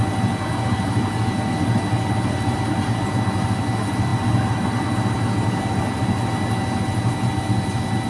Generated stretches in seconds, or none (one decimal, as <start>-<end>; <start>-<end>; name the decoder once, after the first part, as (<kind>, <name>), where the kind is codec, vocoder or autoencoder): none